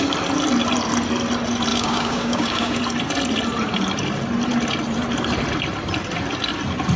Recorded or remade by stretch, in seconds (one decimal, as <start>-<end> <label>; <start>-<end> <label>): 0.0-1.7 recorded; 1.7-2.8 remade; 2.8-7.0 recorded